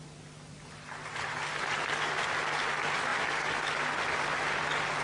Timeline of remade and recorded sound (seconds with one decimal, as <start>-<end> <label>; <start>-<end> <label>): 0.0-5.0 recorded